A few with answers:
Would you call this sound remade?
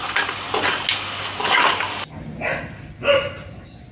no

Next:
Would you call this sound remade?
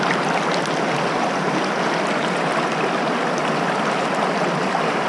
no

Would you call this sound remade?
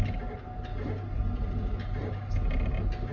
no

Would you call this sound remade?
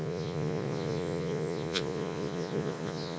yes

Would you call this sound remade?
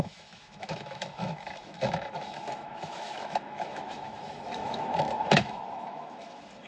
yes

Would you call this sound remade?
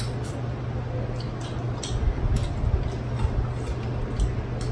no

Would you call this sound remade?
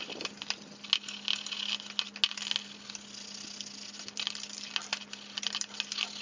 no